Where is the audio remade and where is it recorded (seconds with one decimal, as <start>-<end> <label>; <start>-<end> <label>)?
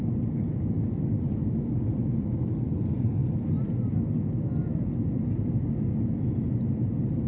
0.0-7.3 recorded